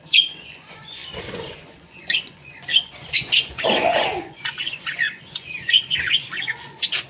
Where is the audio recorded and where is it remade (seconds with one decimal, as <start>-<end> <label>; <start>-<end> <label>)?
0.0-7.1 remade